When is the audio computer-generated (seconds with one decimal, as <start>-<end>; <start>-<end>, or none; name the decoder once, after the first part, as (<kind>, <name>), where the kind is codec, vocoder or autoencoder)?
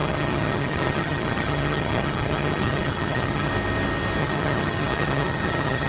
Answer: 0.0-3.5 (vocoder, HiFi-GAN); 4.2-5.9